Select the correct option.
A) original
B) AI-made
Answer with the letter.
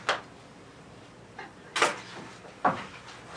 A